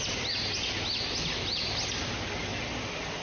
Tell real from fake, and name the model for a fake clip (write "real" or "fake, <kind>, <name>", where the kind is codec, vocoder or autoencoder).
real